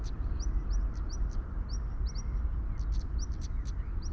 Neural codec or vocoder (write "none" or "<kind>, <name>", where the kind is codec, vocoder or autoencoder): none